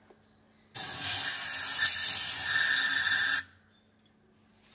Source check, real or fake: real